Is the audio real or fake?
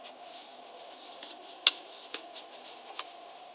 real